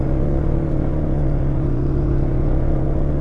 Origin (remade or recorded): remade